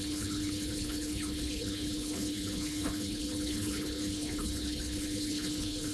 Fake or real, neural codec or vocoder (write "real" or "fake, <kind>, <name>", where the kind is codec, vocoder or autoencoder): fake, codec, HILCodec